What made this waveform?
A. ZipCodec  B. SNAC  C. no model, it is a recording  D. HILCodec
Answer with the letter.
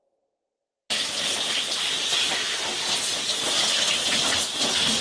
C